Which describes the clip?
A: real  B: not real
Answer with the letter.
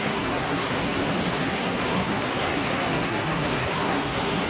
B